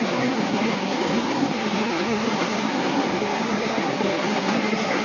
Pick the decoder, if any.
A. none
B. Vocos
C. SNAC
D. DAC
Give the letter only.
C